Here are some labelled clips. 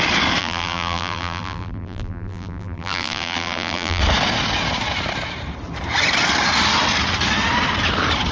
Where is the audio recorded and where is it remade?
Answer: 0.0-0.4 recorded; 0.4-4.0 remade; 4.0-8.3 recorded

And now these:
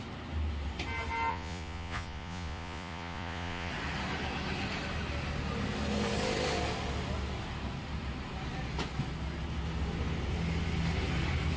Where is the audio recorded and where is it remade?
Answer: 0.0-1.3 recorded; 1.3-3.7 remade; 3.7-11.6 recorded

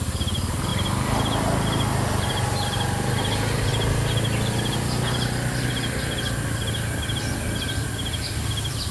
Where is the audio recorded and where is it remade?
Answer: 0.0-8.9 recorded

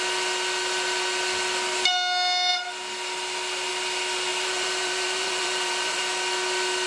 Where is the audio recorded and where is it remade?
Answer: 0.0-4.3 recorded; 4.3-6.0 remade; 6.0-6.9 recorded